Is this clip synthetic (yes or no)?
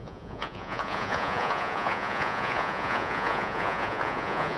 yes